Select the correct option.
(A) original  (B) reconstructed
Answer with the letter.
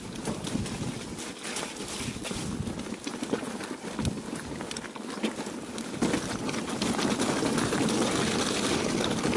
A